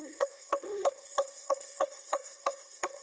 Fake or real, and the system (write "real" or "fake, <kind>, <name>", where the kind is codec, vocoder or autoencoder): fake, codec, SNAC